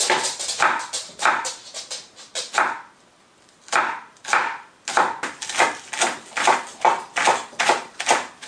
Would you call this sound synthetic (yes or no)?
no